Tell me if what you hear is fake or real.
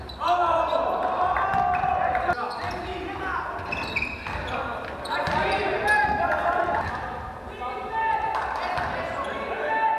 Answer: real